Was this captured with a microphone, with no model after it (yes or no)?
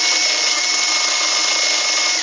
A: yes